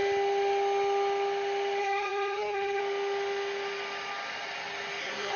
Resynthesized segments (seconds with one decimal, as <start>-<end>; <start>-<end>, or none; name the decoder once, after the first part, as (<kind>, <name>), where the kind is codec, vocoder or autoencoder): 1.8-2.8 (codec, SNAC); 5.0-5.4